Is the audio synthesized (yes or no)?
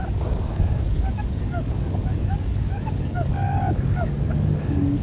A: yes